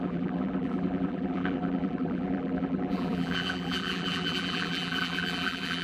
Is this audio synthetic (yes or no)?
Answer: yes